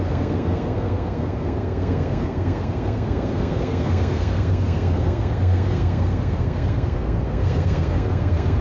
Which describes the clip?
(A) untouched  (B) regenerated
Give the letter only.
B